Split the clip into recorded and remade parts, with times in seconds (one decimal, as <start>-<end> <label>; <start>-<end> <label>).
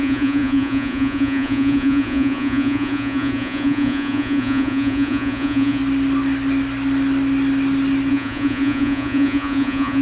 0.0-5.8 remade; 5.8-8.1 recorded; 8.1-10.0 remade